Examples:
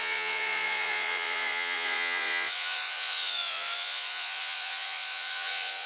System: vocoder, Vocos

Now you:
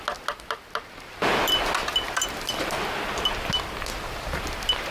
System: none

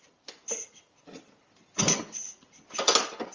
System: none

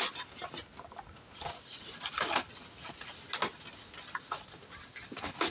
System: none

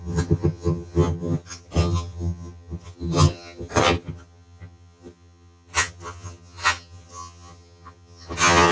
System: vocoder, HiFi-GAN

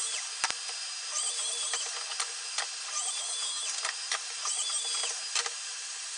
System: none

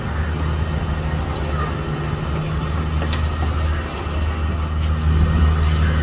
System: none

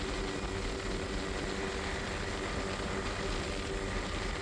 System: none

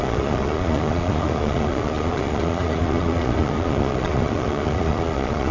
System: vocoder, Vocos